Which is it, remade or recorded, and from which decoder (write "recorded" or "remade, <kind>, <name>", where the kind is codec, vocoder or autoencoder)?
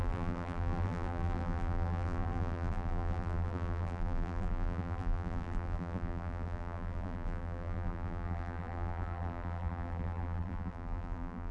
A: remade, vocoder, BigVGAN v2